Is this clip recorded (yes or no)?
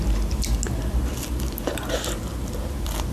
yes